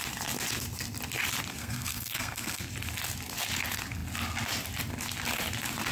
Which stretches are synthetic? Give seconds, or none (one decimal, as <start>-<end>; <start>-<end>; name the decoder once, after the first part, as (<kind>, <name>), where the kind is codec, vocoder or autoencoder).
1.6-2.7 (codec, SNAC)